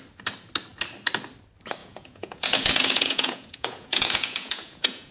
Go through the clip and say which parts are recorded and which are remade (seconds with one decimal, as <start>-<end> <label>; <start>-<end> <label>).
0.0-1.8 recorded; 1.8-5.1 remade